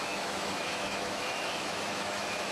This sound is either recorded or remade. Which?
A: remade